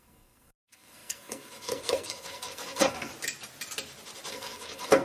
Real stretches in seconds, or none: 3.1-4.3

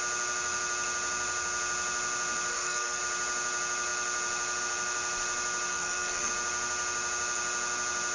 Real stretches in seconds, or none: 0.0-2.5; 3.0-5.7; 6.3-8.1

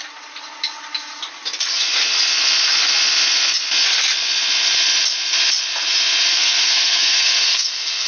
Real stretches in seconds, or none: 0.0-6.3

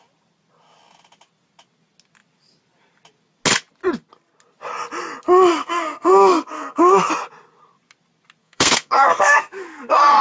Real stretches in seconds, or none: 0.0-5.5; 7.1-8.4

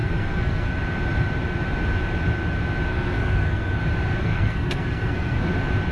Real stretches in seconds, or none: 0.7-2.9; 3.8-4.2; 5.5-5.9

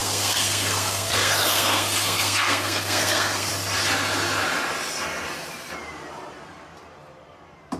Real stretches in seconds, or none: 3.5-7.8

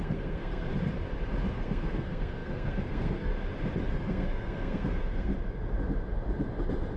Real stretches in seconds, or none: 0.7-1.5; 3.3-3.9; 5.3-7.0

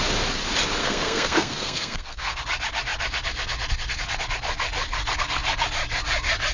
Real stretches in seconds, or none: 0.0-0.8; 2.4-6.5